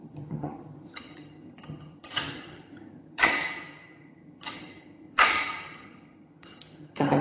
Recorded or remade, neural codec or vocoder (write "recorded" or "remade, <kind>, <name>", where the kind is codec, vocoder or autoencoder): remade, vocoder, HiFi-GAN